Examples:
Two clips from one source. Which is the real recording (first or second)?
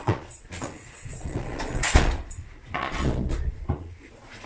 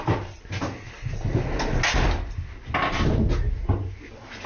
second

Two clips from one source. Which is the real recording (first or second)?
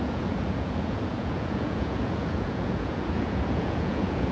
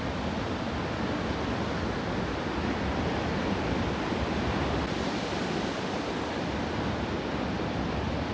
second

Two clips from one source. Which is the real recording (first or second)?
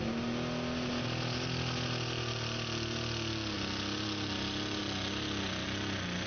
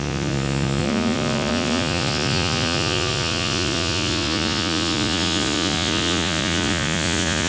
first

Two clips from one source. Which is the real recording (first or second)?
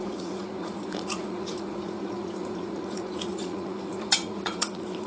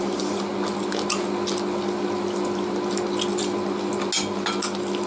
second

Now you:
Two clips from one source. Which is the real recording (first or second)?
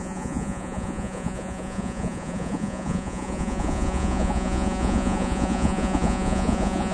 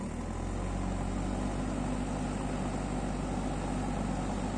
second